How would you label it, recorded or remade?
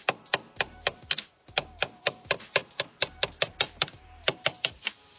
remade